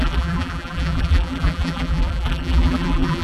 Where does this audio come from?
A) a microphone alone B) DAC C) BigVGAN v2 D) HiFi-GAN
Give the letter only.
C